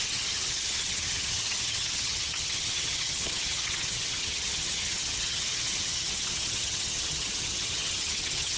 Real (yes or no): no